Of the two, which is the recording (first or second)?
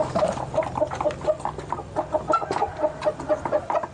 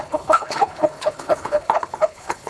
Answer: first